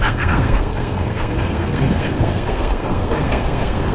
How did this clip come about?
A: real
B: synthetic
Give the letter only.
B